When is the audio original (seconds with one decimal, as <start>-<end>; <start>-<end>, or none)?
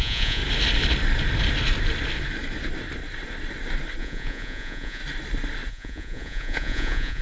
0.4-4.0; 5.0-5.7